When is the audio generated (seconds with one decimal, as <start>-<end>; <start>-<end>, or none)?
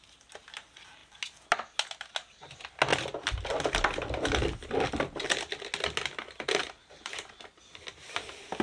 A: none